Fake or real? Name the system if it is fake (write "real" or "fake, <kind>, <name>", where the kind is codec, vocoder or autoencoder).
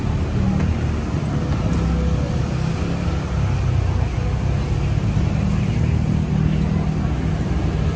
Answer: real